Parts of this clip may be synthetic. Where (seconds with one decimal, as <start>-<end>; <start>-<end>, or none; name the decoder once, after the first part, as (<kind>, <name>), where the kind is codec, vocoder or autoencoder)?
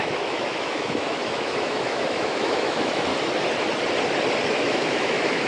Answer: 0.0-3.1 (autoencoder, DAC-VAE); 4.5-5.5